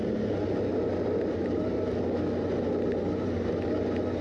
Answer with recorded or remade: recorded